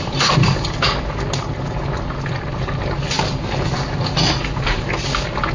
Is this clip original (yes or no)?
yes